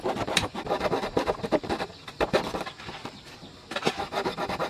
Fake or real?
fake